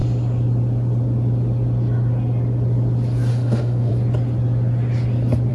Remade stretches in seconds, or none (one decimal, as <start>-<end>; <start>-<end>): 3.3-3.9